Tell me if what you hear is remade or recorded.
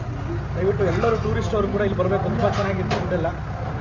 recorded